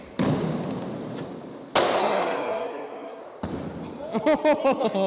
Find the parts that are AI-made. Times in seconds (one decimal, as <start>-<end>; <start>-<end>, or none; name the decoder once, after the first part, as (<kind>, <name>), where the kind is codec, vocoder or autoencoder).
2.0-3.2 (codec, SNAC)